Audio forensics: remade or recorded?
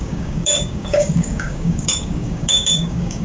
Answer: remade